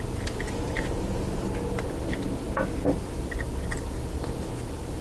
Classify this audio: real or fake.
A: real